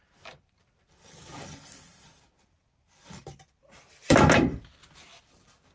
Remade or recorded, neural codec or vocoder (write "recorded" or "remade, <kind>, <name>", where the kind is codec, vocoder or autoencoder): remade, vocoder, BigVGAN v2